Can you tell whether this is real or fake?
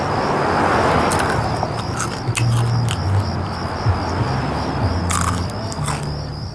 real